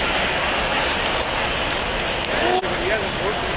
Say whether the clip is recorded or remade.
recorded